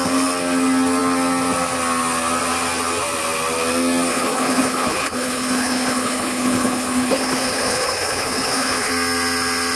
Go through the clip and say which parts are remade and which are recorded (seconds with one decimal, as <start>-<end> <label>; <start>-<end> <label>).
0.0-4.1 recorded; 4.1-8.9 remade; 8.9-9.8 recorded